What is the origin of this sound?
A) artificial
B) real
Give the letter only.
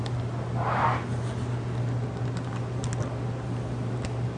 B